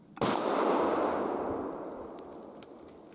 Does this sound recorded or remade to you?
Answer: recorded